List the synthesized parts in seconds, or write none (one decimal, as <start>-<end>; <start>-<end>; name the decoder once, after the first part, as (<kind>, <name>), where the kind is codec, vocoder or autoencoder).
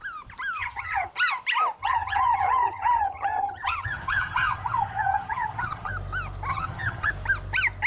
0.6-1.1 (vocoder, HiFi-GAN); 1.8-5.9; 6.5-7.1